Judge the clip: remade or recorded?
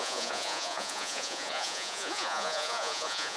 remade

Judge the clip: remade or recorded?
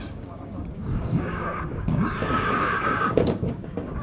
remade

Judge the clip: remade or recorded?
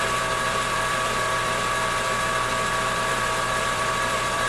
remade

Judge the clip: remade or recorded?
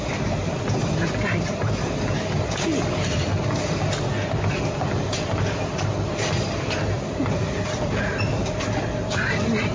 recorded